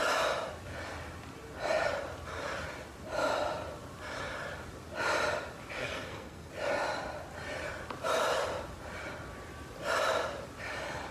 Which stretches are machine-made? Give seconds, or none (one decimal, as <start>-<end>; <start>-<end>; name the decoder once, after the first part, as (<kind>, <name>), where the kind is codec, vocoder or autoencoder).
5.8-6.5 (codec, SNAC)